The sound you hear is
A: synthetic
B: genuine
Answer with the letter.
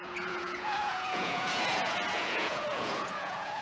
A